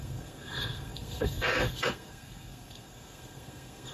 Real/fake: fake